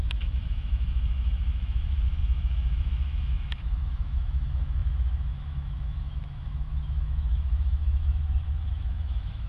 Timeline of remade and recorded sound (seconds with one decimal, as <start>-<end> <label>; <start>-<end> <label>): 0.0-9.5 remade